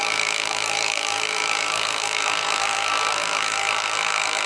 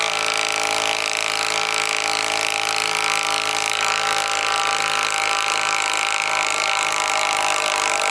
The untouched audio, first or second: second